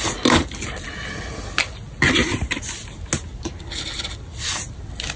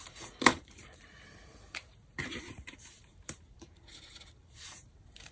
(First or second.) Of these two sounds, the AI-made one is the second